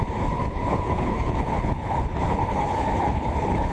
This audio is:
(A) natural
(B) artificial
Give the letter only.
B